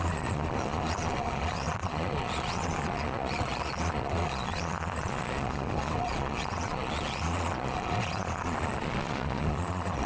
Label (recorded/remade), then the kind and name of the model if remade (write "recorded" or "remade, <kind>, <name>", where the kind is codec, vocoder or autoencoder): remade, vocoder, Vocos